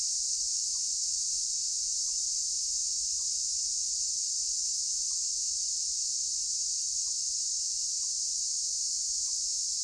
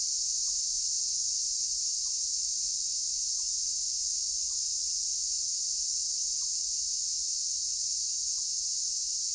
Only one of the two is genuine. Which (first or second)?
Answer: second